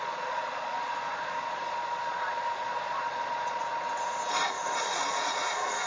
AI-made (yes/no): yes